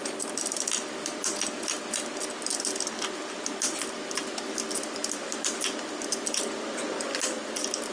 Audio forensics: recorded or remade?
recorded